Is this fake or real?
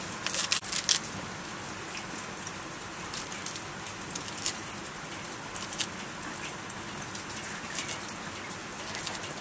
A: real